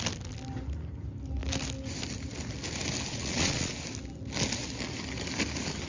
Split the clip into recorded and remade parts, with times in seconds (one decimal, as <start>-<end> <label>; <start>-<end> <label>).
0.0-3.1 recorded; 3.1-3.7 remade; 3.7-5.9 recorded